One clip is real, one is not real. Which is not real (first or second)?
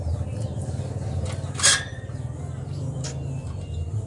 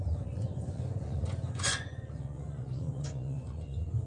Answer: second